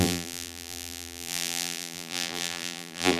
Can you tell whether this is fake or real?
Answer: fake